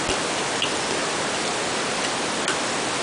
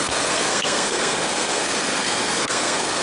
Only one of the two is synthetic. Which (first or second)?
second